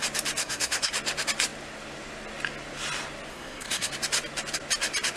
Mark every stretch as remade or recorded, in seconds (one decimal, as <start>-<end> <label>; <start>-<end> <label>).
0.0-0.4 recorded; 0.4-0.9 remade; 0.9-3.3 recorded; 3.3-3.9 remade; 3.9-5.2 recorded